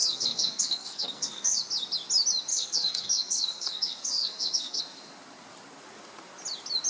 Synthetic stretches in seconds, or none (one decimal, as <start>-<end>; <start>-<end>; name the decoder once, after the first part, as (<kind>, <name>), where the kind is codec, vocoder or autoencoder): 0.0-1.6 (codec, SNAC); 2.5-4.8